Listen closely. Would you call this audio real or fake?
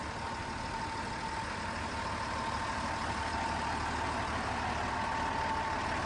real